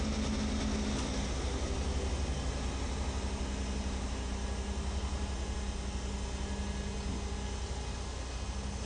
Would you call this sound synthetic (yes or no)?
no